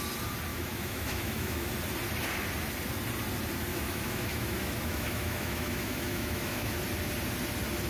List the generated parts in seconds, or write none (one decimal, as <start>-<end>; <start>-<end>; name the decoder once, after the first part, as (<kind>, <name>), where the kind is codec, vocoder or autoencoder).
0.5-1.7 (autoencoder, DAC-VAE); 3.7-6.7